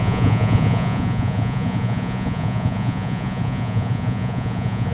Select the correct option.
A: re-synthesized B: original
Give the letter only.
A